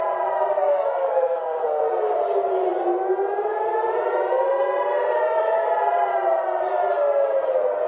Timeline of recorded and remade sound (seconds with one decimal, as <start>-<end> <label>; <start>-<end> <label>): 0.0-0.6 recorded; 0.6-1.8 remade; 1.8-7.9 recorded